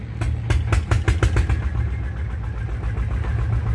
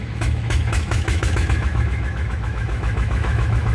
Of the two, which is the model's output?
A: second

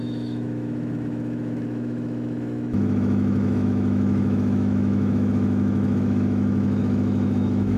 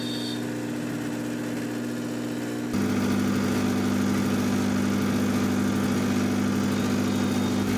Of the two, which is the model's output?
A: first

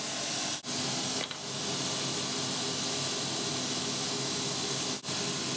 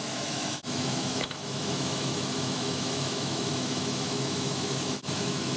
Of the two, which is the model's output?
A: second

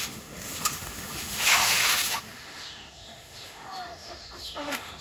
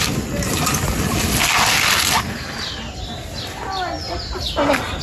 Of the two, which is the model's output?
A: first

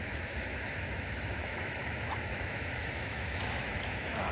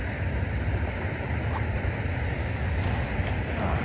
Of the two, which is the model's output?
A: first